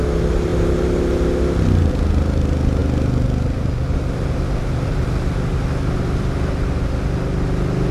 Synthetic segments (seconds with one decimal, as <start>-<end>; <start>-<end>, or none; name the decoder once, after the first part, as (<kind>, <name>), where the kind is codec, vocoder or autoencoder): none